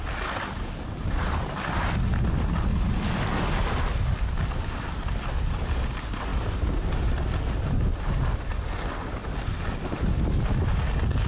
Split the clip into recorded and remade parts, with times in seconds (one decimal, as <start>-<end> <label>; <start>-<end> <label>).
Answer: 0.0-11.3 recorded